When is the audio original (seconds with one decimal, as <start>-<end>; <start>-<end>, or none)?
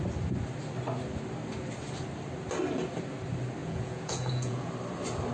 0.0-3.6; 4.7-5.3